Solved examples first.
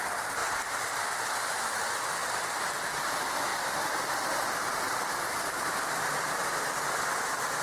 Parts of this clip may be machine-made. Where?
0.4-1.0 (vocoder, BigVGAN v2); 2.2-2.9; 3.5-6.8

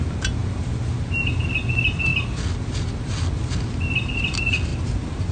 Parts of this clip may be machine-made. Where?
none